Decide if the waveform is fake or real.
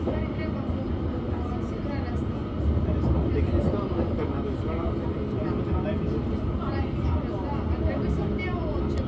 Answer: real